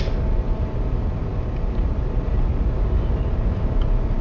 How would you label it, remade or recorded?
recorded